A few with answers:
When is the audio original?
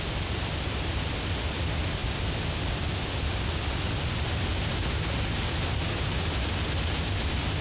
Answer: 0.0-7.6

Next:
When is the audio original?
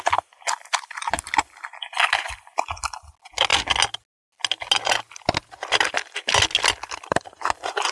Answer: 0.0-7.9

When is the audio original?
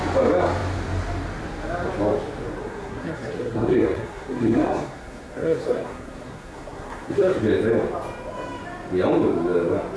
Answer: 0.0-2.6; 7.4-10.0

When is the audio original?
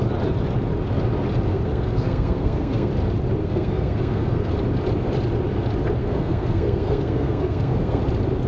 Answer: 0.0-1.5; 2.9-3.4; 4.5-6.0; 8.0-8.5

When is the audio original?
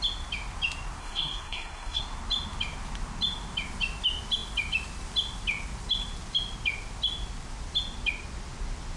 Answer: 0.0-1.0; 2.0-9.0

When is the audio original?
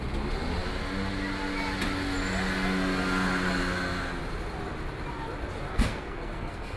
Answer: 0.0-5.7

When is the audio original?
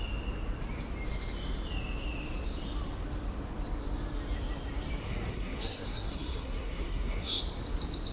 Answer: 0.0-5.0; 7.4-8.1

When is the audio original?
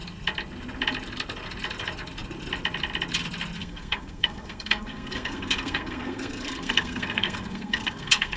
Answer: 0.0-3.6